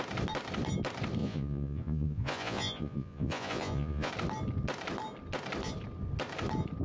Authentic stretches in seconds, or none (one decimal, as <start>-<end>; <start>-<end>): 0.0-1.2; 4.1-6.8

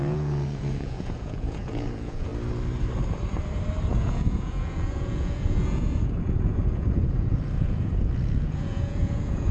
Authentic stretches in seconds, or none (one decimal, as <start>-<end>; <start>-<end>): 2.3-4.0

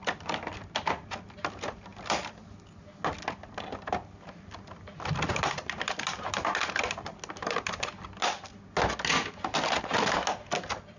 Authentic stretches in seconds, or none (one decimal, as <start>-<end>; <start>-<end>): 0.0-11.0

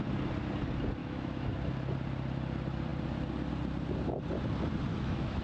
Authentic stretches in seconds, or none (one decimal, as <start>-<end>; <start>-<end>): 0.0-1.0; 1.5-4.9